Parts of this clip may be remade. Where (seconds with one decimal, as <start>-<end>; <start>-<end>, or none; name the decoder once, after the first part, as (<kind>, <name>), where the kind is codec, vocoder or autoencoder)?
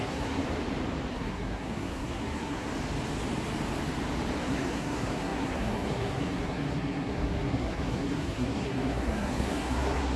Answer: 0.0-0.4 (codec, SNAC); 1.1-2.7; 4.4-10.2